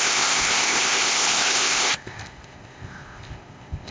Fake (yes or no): yes